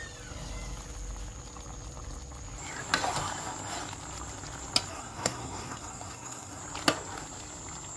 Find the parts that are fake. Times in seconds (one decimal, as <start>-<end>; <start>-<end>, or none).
4.9-6.6